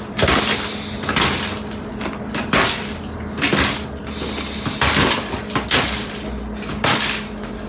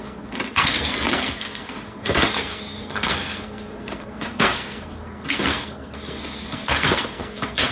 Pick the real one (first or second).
first